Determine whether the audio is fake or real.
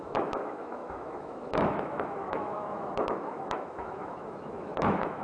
fake